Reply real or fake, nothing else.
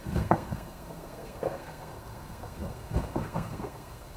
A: fake